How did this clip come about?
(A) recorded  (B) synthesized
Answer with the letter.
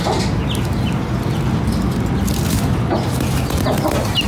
A